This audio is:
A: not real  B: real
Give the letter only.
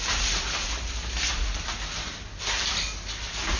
B